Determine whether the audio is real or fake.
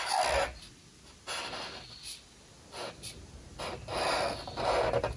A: real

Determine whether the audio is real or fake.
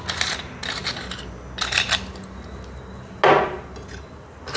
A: real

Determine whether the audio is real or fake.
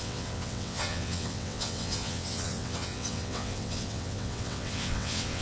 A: fake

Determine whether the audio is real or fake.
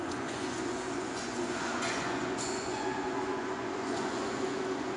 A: fake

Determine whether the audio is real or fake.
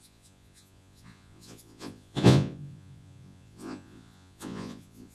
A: fake